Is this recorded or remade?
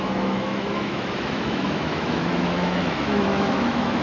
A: remade